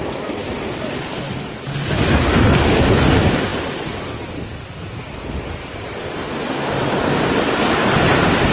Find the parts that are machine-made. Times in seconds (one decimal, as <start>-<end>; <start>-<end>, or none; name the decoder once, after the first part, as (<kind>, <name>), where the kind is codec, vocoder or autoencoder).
none